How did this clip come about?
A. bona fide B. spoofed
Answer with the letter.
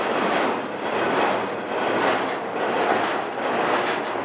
A